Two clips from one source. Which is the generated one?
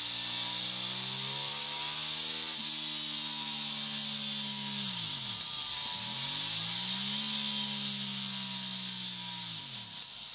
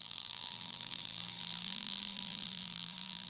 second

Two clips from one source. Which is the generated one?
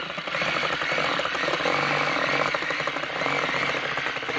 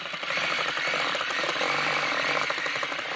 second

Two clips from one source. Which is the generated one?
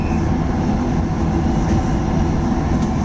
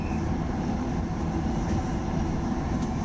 second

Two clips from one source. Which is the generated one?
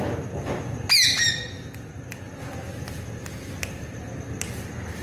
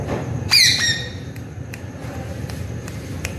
second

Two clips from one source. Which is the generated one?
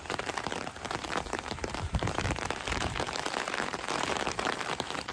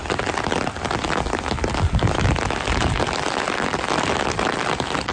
first